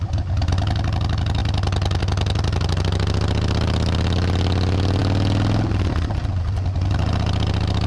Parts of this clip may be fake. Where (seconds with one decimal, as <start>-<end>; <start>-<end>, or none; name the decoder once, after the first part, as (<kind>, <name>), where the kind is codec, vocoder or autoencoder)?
none